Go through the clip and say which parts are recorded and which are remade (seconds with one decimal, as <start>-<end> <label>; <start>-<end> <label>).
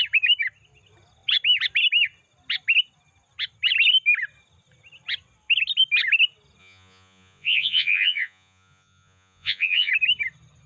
0.0-6.6 recorded; 6.6-9.9 remade; 9.9-10.7 recorded